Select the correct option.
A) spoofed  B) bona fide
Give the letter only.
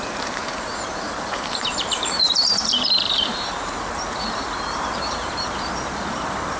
A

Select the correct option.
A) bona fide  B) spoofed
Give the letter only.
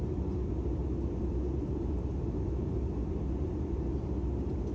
A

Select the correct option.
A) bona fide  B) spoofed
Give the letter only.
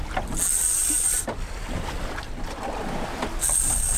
A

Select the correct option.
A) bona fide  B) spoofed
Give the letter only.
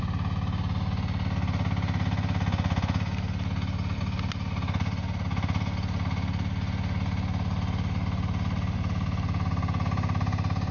A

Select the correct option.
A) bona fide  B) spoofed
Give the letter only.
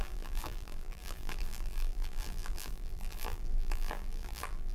B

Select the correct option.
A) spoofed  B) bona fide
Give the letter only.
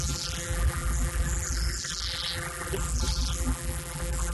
A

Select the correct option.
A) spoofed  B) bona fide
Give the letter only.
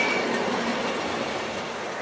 B